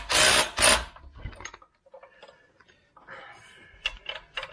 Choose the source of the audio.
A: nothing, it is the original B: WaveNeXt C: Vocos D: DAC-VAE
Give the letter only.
A